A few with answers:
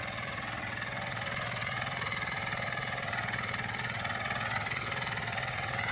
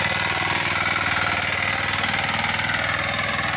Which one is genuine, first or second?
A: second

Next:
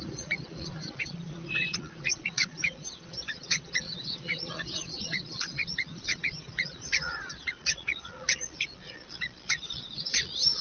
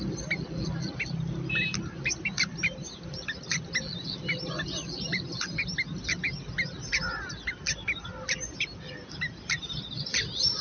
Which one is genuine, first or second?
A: second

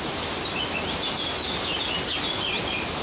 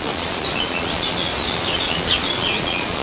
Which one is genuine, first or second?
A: first